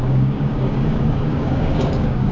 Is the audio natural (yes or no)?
no